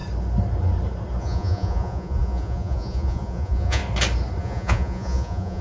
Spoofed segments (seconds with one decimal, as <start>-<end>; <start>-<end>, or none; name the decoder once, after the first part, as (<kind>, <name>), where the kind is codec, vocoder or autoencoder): 1.2-3.8 (vocoder, Vocos); 4.4-5.6